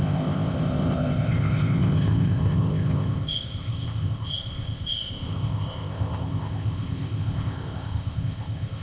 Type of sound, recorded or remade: remade